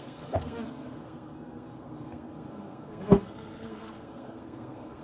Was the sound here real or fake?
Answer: fake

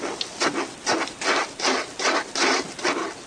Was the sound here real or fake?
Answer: real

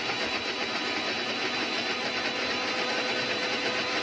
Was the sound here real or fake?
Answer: real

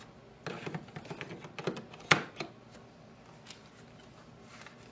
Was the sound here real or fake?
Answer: real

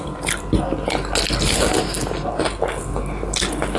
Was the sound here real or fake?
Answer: real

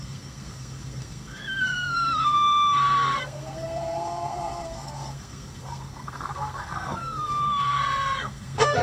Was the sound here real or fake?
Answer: fake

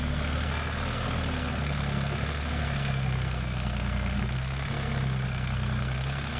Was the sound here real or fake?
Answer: fake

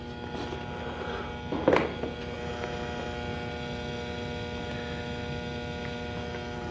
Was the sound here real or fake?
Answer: real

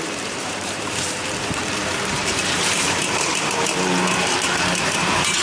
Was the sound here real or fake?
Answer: fake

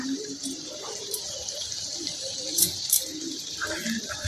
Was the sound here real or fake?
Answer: fake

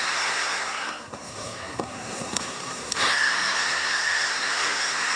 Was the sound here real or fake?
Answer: fake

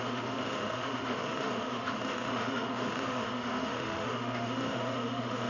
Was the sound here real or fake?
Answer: fake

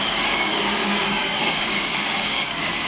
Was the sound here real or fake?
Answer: fake